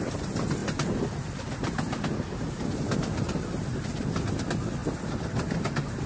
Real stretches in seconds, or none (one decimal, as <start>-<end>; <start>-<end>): 0.0-6.1